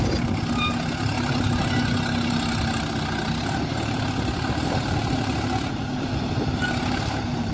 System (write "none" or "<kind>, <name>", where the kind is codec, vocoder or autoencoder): none